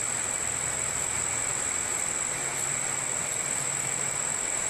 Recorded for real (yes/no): yes